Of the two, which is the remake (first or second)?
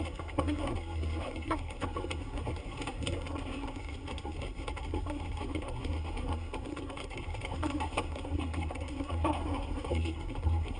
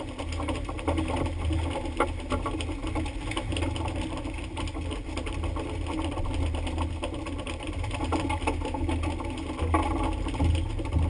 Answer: first